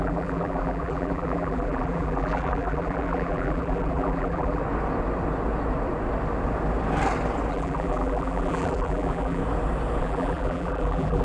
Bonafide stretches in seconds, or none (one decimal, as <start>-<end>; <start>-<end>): 4.6-7.5; 9.4-10.0

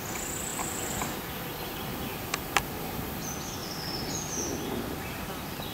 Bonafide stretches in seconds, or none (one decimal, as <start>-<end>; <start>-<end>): 0.0-0.5; 1.2-1.9; 3.2-3.6; 4.1-5.7

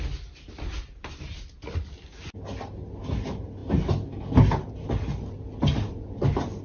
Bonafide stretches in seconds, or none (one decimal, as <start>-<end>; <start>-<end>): 0.0-6.6

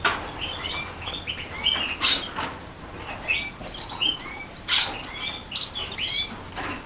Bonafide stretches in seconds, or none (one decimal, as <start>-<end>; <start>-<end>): 0.0-3.6; 4.6-5.4; 6.0-6.9

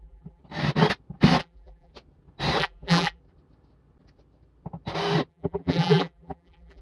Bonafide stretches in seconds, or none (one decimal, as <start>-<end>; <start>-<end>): 0.4-1.4; 1.9-2.6; 3.2-5.3

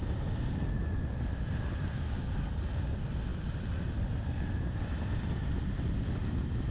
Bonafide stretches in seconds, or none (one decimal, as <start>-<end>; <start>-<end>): 0.0-0.8; 1.5-3.3; 5.9-6.7

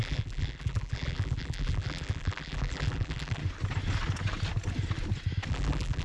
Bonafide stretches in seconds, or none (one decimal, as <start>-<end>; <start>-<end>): 3.4-5.5

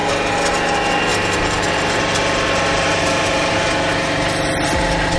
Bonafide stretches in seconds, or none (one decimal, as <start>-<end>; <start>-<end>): 0.0-1.1; 3.7-5.2